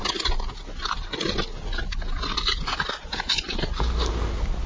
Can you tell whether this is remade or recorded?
recorded